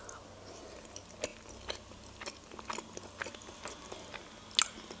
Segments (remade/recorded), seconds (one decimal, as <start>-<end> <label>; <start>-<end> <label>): 0.0-5.0 recorded